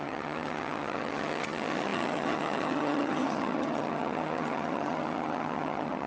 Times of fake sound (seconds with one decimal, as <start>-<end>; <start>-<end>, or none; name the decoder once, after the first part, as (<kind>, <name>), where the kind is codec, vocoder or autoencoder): 0.0-6.1 (vocoder, HiFi-GAN)